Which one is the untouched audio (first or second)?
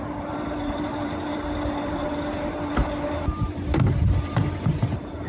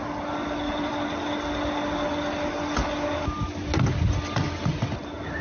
second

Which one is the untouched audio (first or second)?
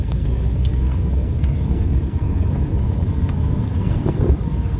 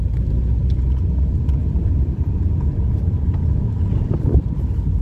second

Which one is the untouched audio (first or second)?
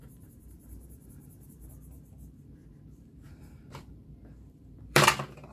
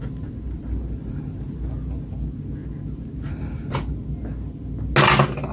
second